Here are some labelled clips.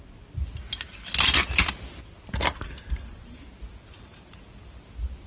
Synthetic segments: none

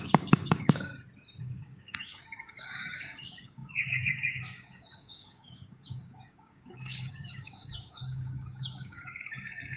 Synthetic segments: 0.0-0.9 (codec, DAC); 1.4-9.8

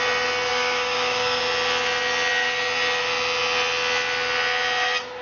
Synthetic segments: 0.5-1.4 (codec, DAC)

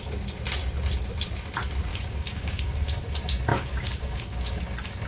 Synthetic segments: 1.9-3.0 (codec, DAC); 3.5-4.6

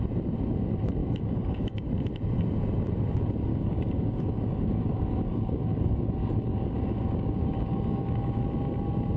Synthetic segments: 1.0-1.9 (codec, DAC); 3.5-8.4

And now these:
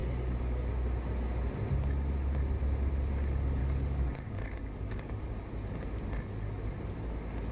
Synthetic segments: 3.6-5.3 (codec, DAC)

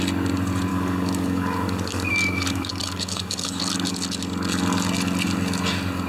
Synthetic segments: 0.7-3.6 (codec, DAC)

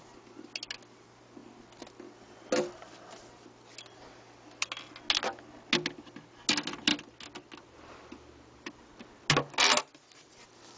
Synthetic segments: none